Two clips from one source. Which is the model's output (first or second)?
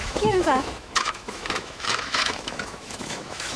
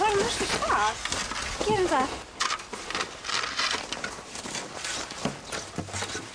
first